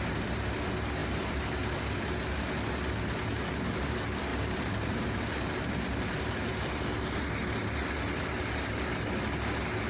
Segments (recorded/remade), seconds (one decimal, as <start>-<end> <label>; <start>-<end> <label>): 0.0-1.0 recorded; 1.0-2.0 remade; 2.0-4.3 recorded; 4.3-7.3 remade; 7.3-9.9 recorded